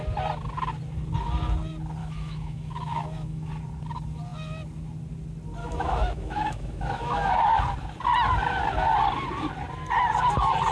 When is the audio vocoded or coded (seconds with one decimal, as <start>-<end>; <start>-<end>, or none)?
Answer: 2.0-3.5; 5.6-7.6